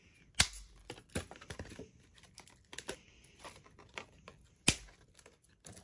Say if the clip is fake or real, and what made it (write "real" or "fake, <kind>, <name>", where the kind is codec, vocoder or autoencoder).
real